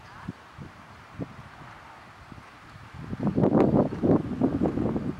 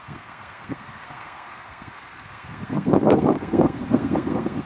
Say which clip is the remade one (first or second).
second